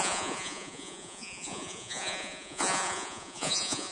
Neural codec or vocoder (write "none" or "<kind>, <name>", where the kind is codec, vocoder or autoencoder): vocoder, Vocos